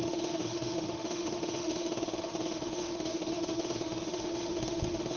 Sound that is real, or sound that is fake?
fake